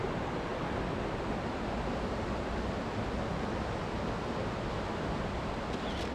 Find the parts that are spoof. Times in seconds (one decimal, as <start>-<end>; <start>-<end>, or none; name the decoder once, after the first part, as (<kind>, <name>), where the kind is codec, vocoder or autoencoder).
none

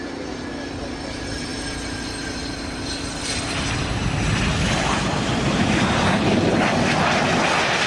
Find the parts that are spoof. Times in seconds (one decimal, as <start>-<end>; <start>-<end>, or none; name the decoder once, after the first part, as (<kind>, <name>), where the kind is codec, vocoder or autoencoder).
none